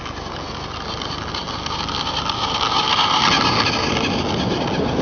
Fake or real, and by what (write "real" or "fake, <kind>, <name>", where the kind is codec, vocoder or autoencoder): real